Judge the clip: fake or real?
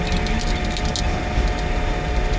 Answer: real